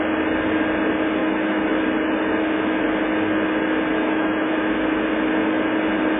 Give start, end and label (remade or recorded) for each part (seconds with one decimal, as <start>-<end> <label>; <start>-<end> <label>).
0.0-1.2 recorded; 1.2-1.7 remade; 1.7-3.9 recorded; 3.9-4.5 remade; 4.5-6.2 recorded